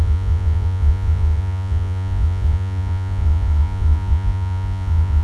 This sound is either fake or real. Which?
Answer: fake